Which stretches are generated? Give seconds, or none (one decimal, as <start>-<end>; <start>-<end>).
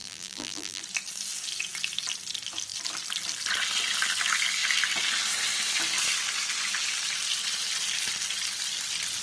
0.0-0.8